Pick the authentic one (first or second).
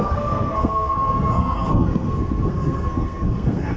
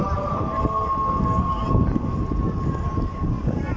second